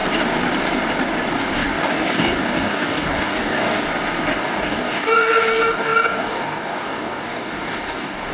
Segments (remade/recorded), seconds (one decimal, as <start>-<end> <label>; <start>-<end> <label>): 0.0-1.3 recorded; 1.3-3.9 remade; 3.9-4.4 recorded; 4.4-8.3 remade